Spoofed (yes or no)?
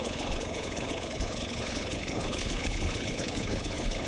yes